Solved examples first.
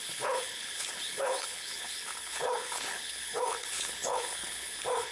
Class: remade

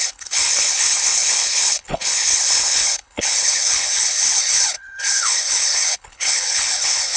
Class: remade